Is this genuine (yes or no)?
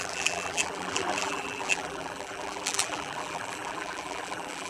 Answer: no